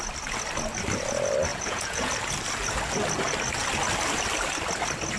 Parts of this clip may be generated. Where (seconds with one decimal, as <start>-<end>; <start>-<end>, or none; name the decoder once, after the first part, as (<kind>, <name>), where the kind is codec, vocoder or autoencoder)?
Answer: 1.5-2.1 (vocoder, Vocos)